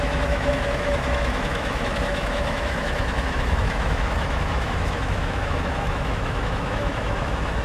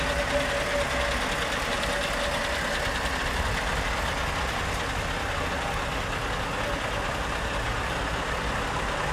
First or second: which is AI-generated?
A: first